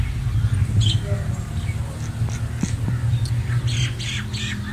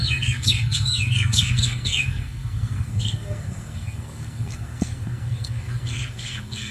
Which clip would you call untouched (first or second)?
first